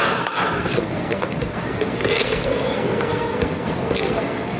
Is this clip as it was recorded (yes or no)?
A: no